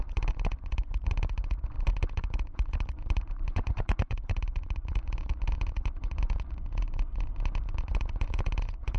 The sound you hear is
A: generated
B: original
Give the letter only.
A